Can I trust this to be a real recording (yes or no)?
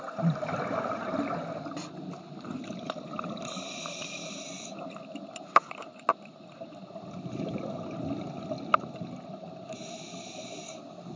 yes